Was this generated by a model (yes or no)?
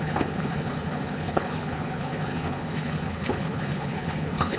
yes